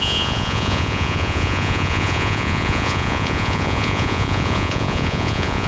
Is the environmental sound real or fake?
fake